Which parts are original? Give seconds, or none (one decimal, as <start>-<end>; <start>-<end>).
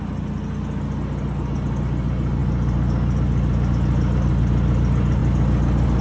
0.0-6.0